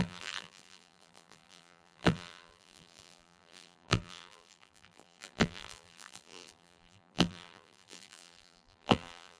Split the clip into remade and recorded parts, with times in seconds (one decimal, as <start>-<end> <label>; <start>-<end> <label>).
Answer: 0.0-9.4 remade